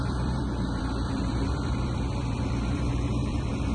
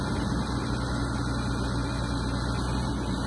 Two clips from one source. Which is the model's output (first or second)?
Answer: first